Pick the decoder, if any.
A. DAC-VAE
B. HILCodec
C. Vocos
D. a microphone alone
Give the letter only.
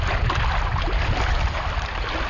D